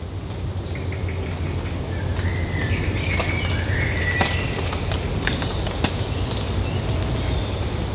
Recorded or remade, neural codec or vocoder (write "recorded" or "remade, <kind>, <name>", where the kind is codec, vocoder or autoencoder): recorded